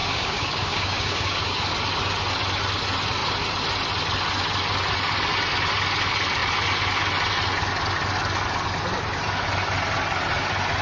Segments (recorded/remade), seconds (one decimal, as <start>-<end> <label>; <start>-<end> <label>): 0.0-1.6 remade; 1.6-10.8 recorded